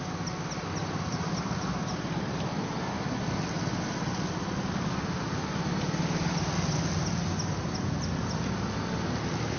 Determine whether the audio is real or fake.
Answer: real